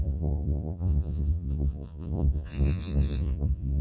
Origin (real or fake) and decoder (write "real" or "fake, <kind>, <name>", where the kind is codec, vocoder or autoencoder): fake, vocoder, Vocos